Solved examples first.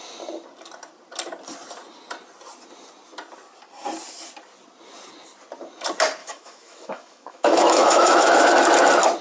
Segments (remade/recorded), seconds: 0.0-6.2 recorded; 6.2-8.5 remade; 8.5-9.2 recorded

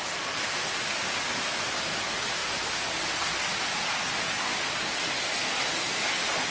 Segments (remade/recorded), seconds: 0.0-6.5 recorded

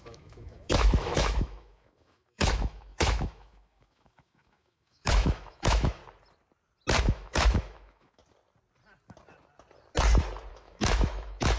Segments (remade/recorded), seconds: 0.0-6.0 remade; 6.0-7.0 recorded; 7.0-8.2 remade; 8.2-10.5 recorded; 10.5-11.6 remade

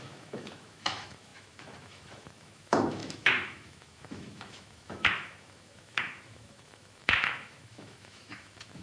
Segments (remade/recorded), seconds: 0.0-8.8 remade